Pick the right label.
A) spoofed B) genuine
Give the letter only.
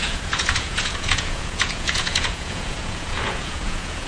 A